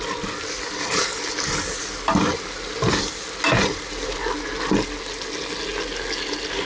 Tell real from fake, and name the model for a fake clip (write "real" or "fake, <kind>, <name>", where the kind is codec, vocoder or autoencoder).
real